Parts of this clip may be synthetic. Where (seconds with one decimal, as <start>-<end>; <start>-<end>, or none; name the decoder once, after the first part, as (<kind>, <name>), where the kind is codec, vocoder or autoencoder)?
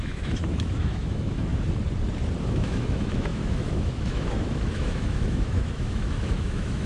0.0-1.5 (autoencoder, DAC-VAE); 2.5-6.9